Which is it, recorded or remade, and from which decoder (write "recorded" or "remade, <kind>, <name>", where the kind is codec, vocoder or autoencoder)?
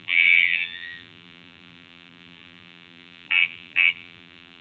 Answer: remade, vocoder, BigVGAN v2